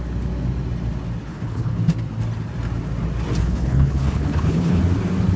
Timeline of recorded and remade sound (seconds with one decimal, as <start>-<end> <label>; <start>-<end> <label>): 0.0-1.3 recorded; 1.3-1.8 remade; 1.8-3.4 recorded; 3.4-4.8 remade; 4.8-5.4 recorded